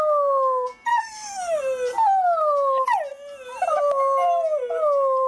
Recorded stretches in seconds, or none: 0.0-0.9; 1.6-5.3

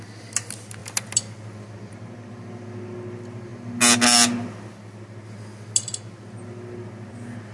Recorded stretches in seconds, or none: 0.0-7.5